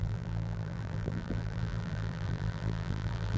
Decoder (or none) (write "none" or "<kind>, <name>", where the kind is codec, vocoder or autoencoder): vocoder, BigVGAN v2